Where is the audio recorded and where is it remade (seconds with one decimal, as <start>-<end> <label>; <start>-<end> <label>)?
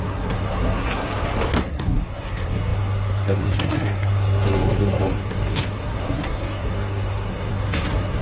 0.0-1.1 remade; 1.1-1.6 recorded; 1.6-8.2 remade